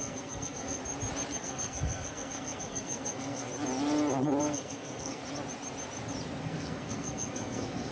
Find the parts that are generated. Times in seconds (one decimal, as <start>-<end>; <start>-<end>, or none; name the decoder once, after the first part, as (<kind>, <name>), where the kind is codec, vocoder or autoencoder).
0.0-0.8 (codec, SNAC); 1.4-3.5; 4.4-5.2; 6.4-7.9